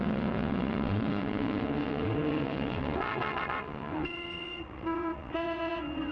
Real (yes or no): no